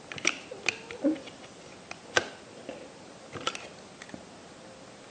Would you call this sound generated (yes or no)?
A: no